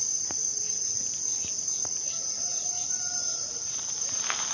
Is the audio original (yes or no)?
yes